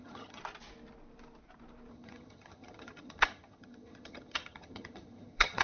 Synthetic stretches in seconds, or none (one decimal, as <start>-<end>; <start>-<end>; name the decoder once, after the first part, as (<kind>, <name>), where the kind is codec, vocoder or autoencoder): 0.0-0.4 (vocoder, HiFi-GAN); 1.9-5.6